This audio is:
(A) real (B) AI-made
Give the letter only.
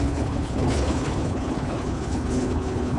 B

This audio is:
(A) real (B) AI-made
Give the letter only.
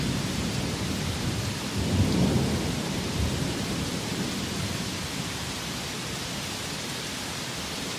B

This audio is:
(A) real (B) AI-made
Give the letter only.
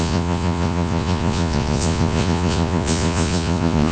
B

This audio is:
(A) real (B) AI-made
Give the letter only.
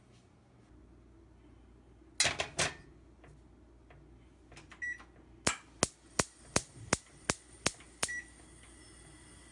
A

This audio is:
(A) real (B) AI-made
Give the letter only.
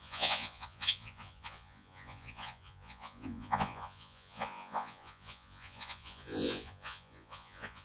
B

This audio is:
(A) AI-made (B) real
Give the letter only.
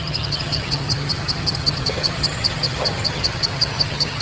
A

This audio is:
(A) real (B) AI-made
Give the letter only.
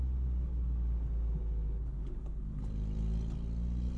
A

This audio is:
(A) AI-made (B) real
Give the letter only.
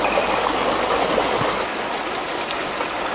B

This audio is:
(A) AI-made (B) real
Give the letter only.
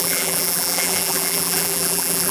A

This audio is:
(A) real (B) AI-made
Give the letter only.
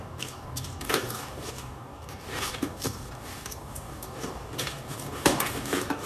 B